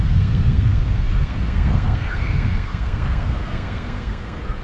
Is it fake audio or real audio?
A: fake